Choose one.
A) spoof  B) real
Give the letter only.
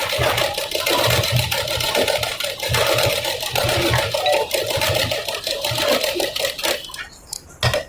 B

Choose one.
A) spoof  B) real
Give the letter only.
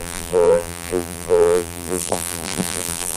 A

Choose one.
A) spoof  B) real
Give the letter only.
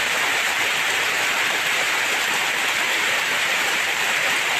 A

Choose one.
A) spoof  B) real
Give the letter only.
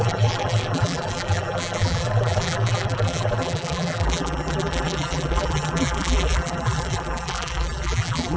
A